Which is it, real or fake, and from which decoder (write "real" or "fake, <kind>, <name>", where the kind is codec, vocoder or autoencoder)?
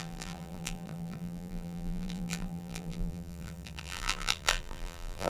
fake, vocoder, BigVGAN v2